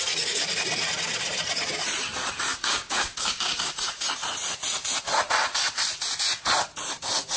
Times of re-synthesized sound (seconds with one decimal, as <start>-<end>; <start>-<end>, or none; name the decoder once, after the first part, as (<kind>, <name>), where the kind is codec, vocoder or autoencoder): 2.5-3.7 (codec, DAC)